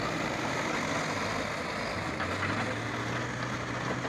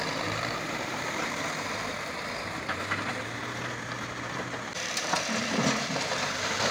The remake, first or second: second